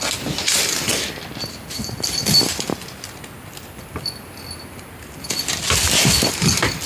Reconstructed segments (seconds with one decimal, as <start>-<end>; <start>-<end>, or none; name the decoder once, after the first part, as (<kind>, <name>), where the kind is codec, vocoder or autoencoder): none